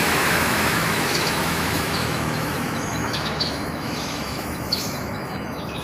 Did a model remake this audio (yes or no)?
yes